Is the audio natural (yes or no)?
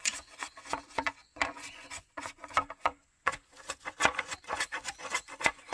no